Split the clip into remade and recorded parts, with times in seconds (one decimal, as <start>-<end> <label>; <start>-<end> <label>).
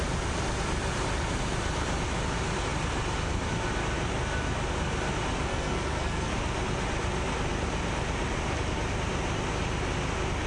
0.0-5.5 recorded; 5.5-6.3 remade; 6.3-10.5 recorded